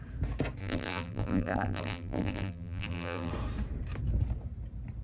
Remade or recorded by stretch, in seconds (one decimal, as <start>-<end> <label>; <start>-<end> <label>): 0.0-0.6 recorded; 0.6-3.3 remade; 3.3-5.0 recorded